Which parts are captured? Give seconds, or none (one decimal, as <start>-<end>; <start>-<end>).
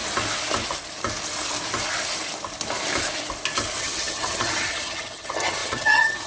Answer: 0.0-3.8